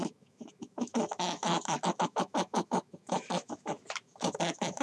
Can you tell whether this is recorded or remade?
remade